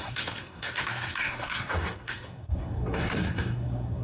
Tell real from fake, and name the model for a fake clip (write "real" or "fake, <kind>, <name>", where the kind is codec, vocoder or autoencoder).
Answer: fake, codec, SNAC